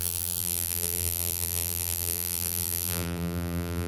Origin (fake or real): fake